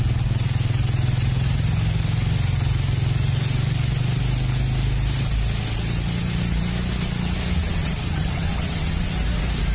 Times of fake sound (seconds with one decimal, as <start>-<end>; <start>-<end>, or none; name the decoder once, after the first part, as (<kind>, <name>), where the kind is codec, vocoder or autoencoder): 7.6-9.1 (vocoder, WaveNeXt)